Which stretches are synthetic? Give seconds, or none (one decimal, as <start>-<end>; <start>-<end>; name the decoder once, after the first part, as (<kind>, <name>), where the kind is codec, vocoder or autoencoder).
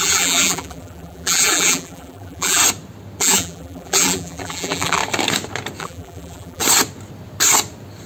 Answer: 0.0-2.6 (vocoder, BigVGAN v2); 3.2-5.0; 5.8-6.6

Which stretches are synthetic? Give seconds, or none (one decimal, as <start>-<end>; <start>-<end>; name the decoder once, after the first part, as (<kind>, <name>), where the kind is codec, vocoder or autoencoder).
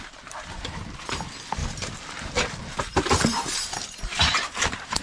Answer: 1.6-4.6 (vocoder, BigVGAN v2)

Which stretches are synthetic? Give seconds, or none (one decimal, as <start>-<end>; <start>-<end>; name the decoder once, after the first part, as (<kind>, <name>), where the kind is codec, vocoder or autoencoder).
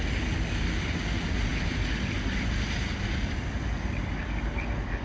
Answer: none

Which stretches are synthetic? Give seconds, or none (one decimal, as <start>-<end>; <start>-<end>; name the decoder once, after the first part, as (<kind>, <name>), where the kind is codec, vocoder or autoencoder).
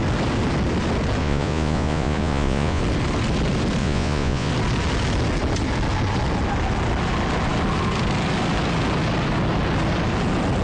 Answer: 1.2-2.8 (vocoder, Vocos); 3.8-4.5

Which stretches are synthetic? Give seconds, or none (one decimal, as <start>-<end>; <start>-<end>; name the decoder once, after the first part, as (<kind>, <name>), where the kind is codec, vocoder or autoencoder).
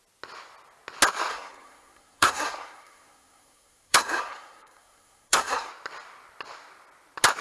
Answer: 1.3-5.7 (codec, SNAC)